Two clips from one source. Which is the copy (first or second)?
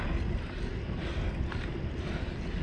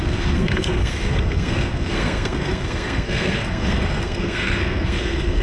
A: second